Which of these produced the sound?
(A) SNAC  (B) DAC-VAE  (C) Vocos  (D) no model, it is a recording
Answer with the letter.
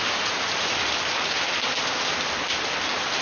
D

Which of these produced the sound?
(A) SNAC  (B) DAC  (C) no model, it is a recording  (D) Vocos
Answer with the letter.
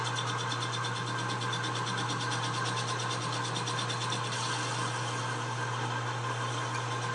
C